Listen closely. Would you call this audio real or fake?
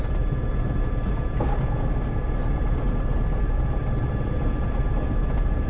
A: real